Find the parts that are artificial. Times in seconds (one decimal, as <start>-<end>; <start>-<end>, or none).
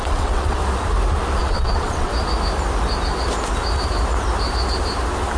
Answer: 0.0-0.6; 1.4-2.1